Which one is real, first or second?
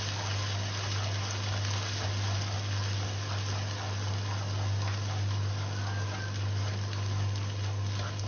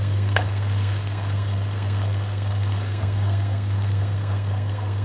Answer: first